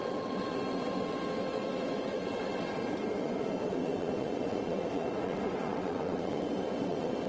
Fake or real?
fake